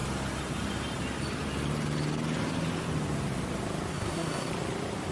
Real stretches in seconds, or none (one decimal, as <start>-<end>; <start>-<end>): 0.0-3.9; 4.5-5.1